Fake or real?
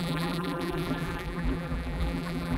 fake